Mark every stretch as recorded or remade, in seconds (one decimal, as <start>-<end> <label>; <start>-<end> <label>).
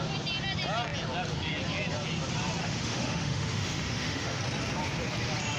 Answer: 0.0-2.6 recorded; 2.6-4.4 remade; 4.4-5.6 recorded